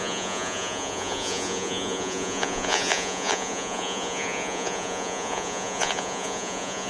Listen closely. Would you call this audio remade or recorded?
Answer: remade